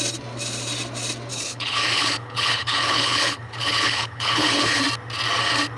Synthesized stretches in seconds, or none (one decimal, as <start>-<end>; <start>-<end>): 1.3-4.8